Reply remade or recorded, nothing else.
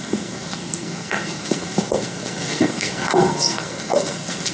remade